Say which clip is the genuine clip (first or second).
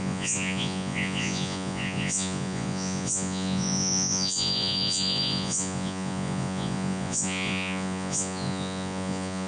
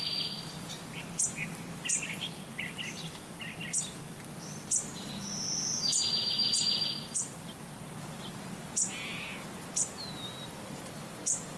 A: second